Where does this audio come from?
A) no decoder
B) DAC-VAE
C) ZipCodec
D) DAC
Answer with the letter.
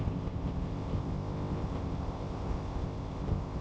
C